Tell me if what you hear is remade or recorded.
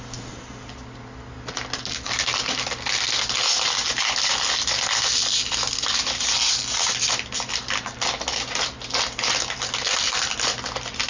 recorded